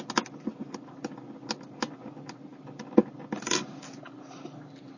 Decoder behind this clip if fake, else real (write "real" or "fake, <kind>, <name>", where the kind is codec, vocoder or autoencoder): real